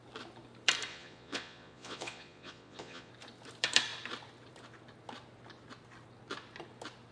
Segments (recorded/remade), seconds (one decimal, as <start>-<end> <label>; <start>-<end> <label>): 0.0-0.9 recorded; 0.9-3.1 remade; 3.1-7.1 recorded